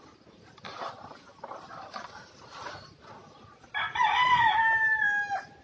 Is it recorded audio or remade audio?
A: recorded